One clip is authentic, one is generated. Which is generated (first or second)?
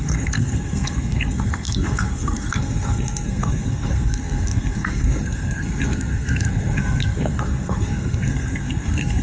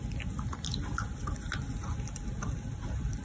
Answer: first